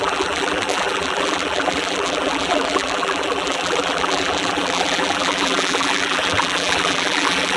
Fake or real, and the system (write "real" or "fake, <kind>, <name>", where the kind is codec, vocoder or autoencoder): fake, vocoder, BigVGAN v2